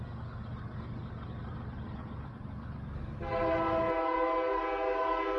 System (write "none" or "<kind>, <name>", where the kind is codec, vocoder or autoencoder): none